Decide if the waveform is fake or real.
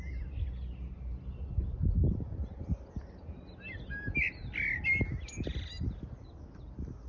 real